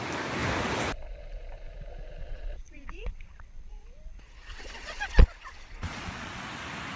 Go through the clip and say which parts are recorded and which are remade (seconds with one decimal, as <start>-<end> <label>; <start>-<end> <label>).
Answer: 0.0-2.2 recorded; 2.2-6.4 remade; 6.4-7.0 recorded